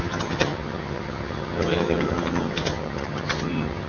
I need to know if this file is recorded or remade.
remade